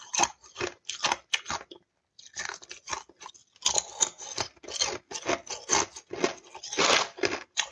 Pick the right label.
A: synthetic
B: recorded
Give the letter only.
B